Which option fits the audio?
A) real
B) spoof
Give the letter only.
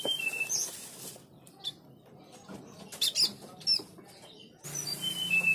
A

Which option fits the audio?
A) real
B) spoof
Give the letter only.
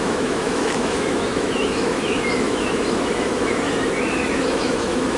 B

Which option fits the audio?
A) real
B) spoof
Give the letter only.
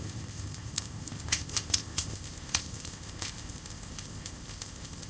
B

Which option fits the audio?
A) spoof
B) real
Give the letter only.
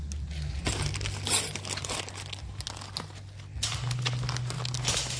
B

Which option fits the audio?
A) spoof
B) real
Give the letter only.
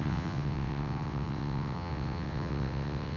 A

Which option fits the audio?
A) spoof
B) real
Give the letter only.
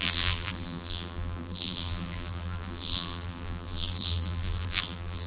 A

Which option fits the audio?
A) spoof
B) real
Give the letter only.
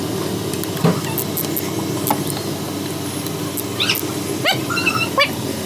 B